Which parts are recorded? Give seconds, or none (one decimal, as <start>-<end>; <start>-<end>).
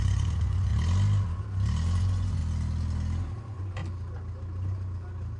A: 0.7-2.0; 2.4-3.4; 3.8-5.4